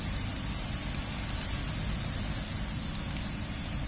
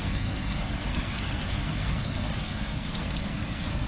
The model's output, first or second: second